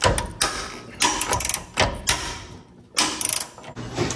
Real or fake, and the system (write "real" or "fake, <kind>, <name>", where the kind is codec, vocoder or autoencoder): real